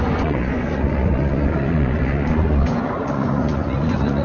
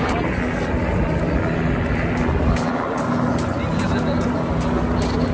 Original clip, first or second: second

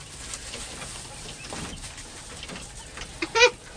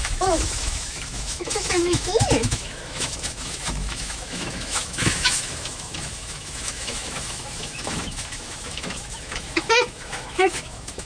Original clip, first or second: first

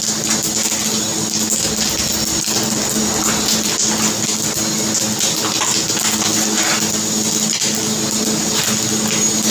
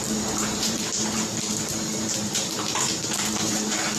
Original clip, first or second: first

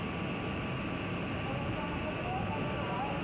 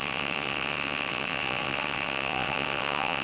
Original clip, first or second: first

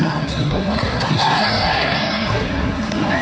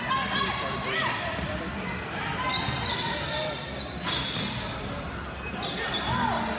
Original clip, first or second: second